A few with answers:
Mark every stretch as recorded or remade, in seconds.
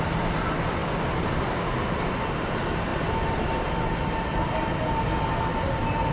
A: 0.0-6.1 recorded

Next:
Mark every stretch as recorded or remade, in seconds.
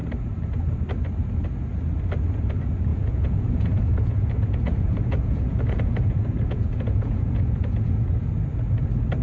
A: 0.0-2.9 recorded; 2.9-7.9 remade; 7.9-9.2 recorded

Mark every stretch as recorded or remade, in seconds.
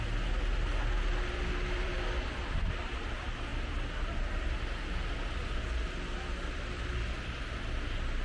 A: 0.0-1.8 recorded; 1.8-2.6 remade; 2.6-8.2 recorded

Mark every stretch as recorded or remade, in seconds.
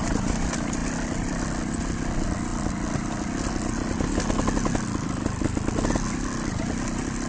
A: 0.0-7.3 recorded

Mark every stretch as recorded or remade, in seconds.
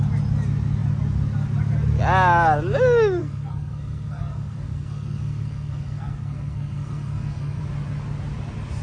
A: 0.0-3.2 recorded; 3.2-7.6 remade; 7.6-8.8 recorded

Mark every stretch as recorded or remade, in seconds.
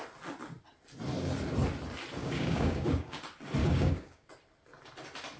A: 0.0-2.2 recorded; 2.2-3.2 remade; 3.2-3.6 recorded; 3.6-4.3 remade; 4.3-5.4 recorded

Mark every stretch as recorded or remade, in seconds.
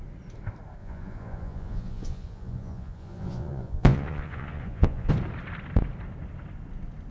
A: 0.0-0.8 recorded; 0.8-5.1 remade; 5.1-7.1 recorded